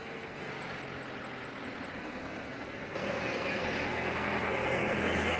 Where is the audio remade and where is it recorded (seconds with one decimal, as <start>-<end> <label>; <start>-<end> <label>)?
0.0-0.5 remade; 0.5-1.9 recorded; 1.9-5.4 remade